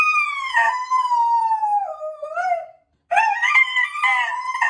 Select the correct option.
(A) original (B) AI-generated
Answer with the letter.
A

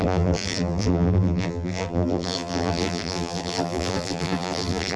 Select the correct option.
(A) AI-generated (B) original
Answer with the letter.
A